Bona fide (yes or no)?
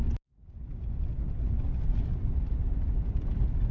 yes